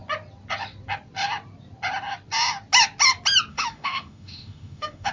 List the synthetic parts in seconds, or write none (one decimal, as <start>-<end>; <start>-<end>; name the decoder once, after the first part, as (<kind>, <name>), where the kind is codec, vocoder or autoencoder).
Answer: 3.5-5.1 (autoencoder, DAC-VAE)